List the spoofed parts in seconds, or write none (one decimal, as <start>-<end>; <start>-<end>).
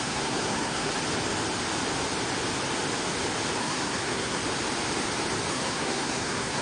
0.0-0.9; 3.6-4.4; 5.5-6.6